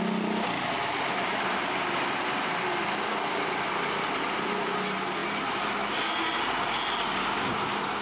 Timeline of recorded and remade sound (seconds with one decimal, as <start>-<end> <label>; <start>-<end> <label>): 0.0-8.0 recorded